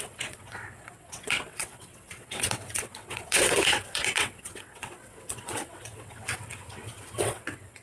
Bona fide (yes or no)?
no